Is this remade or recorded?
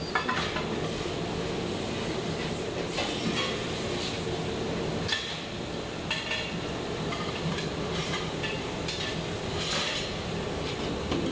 recorded